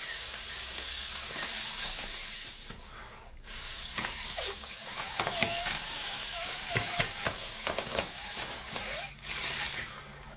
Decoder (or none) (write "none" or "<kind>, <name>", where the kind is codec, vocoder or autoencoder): codec, DAC